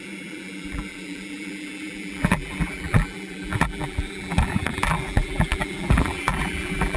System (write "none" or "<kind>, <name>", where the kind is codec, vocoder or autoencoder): vocoder, BigVGAN v2